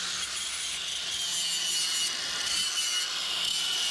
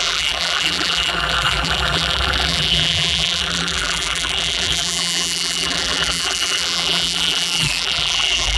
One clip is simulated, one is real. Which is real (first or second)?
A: first